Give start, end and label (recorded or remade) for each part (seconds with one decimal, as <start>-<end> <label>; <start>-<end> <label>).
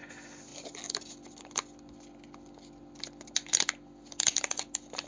0.0-5.1 recorded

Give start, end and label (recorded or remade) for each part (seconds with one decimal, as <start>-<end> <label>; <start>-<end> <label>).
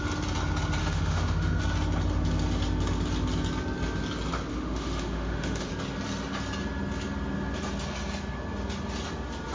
0.0-0.8 recorded; 0.8-1.6 remade; 1.6-4.5 recorded; 4.5-5.7 remade; 5.7-9.5 recorded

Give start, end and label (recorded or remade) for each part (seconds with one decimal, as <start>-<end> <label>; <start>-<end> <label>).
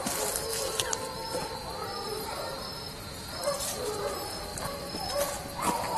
0.0-6.0 recorded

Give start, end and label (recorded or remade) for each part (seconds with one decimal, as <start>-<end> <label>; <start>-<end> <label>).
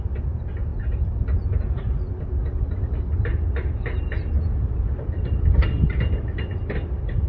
0.0-7.3 recorded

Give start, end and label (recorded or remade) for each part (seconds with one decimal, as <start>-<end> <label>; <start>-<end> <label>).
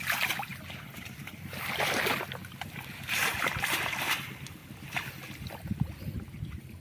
0.0-6.8 recorded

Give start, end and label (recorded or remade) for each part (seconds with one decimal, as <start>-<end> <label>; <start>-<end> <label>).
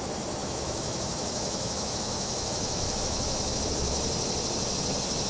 0.0-0.4 recorded; 0.4-3.6 remade; 3.6-5.3 recorded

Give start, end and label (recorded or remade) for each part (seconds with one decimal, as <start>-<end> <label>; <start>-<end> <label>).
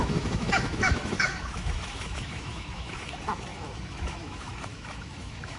0.0-5.6 remade